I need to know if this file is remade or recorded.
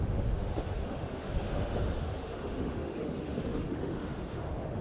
remade